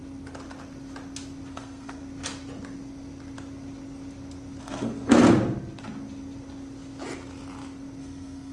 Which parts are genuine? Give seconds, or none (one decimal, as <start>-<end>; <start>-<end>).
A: 0.0-1.5; 2.0-4.6; 5.2-8.0